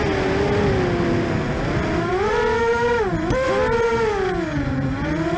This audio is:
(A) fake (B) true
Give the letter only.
B